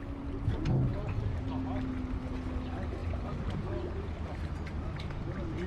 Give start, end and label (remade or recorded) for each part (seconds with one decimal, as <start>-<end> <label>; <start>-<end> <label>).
0.0-5.7 recorded